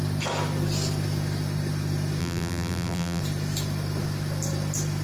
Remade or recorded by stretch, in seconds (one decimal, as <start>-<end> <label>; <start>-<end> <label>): 0.0-2.2 recorded; 2.2-3.2 remade; 3.2-5.0 recorded

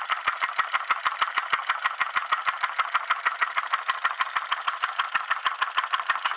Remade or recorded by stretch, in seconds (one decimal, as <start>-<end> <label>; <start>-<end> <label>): 0.0-6.4 recorded